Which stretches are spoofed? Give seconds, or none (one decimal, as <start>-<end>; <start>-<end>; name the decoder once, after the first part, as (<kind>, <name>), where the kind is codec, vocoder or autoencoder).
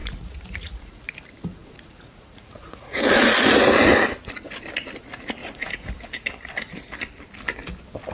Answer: 0.0-1.0 (vocoder, Vocos); 1.6-3.0; 5.4-5.9